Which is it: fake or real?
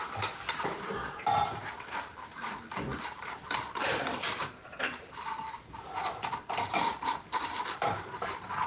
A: fake